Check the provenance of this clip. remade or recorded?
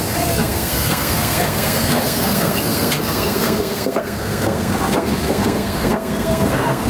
remade